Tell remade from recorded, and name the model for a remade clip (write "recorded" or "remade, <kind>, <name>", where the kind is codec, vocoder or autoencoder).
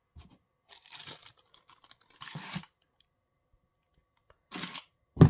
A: recorded